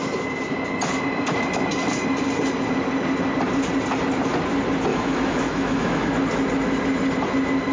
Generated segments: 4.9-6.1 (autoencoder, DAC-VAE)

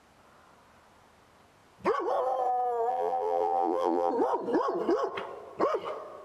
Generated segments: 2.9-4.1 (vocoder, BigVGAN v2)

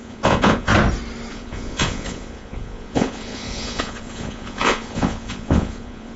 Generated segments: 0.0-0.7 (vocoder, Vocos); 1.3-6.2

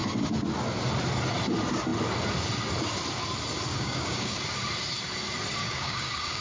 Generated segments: 3.7-4.4 (codec, DAC); 5.6-6.4

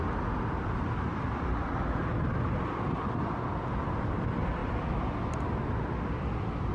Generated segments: none

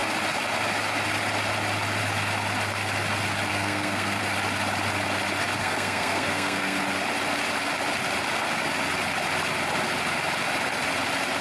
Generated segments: 3.5-4.2 (codec, SNAC); 5.6-6.8